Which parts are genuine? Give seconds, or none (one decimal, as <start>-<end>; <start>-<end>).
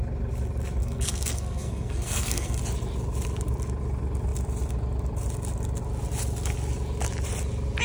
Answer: 0.0-0.8; 2.6-7.8